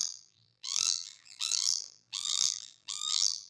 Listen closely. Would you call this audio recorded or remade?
remade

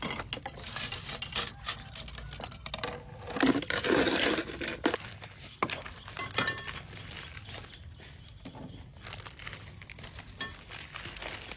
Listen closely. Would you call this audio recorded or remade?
recorded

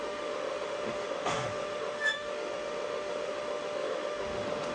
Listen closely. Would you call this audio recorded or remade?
remade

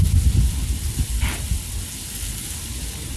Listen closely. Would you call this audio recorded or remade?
recorded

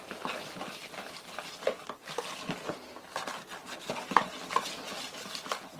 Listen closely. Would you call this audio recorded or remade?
recorded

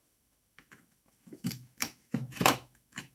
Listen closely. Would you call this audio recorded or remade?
remade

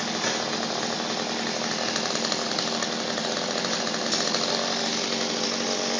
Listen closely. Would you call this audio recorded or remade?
recorded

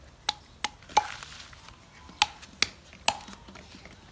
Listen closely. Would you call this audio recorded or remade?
recorded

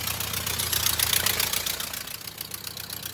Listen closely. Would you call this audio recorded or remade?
recorded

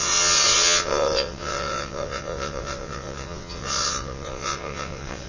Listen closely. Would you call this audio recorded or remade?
remade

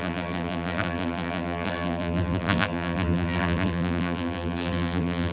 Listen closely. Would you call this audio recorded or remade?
remade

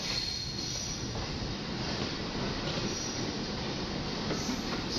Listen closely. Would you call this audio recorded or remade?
remade